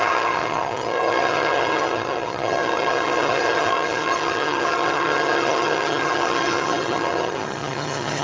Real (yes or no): no